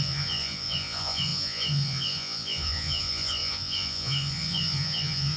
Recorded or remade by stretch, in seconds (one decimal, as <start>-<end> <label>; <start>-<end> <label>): 0.0-5.4 remade